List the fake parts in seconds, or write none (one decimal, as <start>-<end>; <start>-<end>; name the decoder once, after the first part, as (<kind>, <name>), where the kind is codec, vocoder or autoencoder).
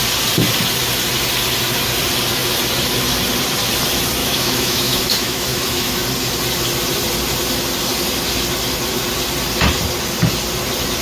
4.2-6.0 (autoencoder, DAC-VAE)